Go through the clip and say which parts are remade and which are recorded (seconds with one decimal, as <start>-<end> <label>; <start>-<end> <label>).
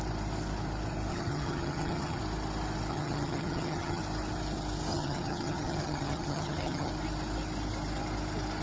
0.0-1.1 recorded; 1.1-2.2 remade; 2.2-2.9 recorded; 2.9-4.0 remade; 4.0-4.9 recorded; 4.9-6.9 remade; 6.9-8.6 recorded